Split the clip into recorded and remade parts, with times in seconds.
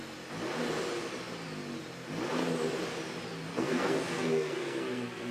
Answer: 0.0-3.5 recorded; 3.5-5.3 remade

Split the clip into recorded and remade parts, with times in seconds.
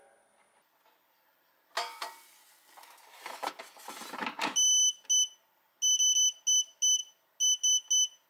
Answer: 0.0-8.3 recorded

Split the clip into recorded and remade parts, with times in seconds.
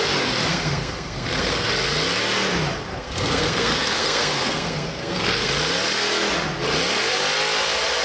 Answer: 0.0-0.5 recorded; 0.5-1.7 remade; 1.7-2.9 recorded; 2.9-5.5 remade; 5.5-8.0 recorded